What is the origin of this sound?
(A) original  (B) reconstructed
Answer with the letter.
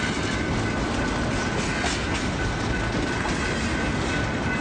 A